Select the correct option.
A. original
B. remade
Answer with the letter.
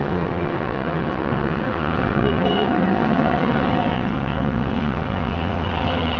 B